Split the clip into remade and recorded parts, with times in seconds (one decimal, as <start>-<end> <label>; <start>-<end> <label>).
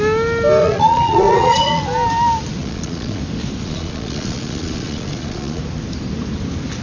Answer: 0.0-0.6 recorded; 0.6-1.8 remade; 1.8-2.6 recorded; 2.6-3.2 remade; 3.2-3.6 recorded; 3.6-5.6 remade; 5.6-6.8 recorded